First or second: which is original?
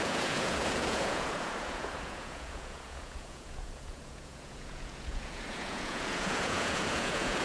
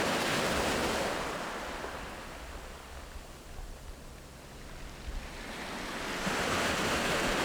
second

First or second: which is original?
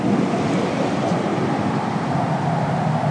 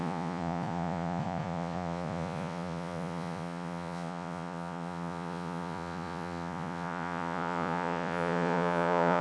first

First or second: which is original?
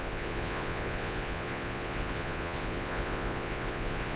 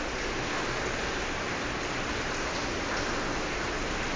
second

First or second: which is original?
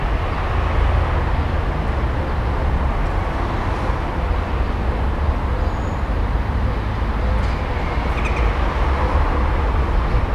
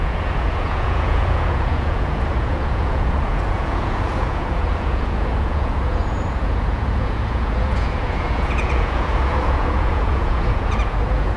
first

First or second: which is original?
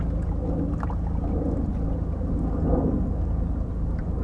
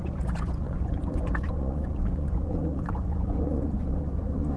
first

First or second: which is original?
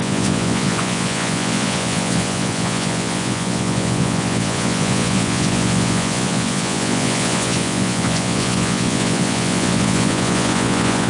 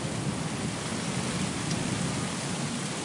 second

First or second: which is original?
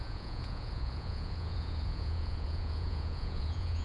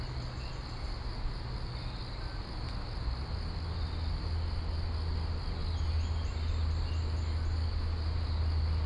second